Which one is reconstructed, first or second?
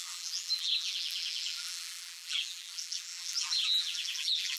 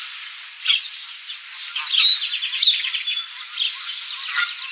first